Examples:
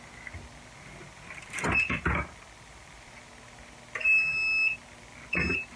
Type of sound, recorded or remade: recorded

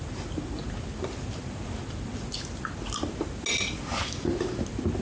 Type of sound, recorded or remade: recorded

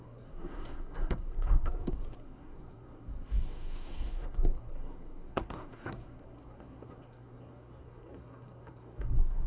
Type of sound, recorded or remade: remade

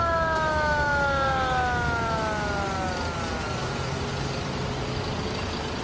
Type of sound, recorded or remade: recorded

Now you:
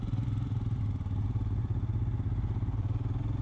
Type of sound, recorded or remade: recorded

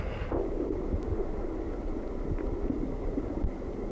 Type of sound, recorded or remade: recorded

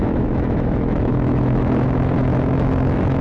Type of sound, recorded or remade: remade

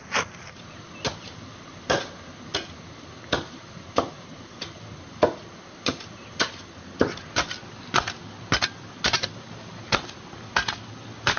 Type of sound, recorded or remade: recorded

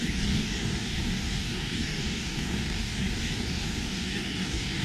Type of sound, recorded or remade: remade